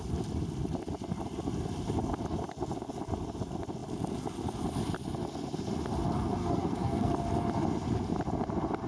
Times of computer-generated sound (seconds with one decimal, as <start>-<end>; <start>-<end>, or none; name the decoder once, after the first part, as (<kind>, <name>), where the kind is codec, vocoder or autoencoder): 6.4-7.1 (codec, SNAC)